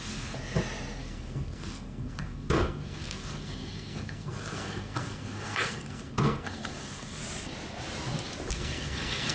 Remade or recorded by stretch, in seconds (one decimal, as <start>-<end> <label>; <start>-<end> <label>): 0.0-0.4 remade; 0.4-1.0 recorded; 1.0-7.2 remade; 7.2-8.5 recorded; 8.5-9.3 remade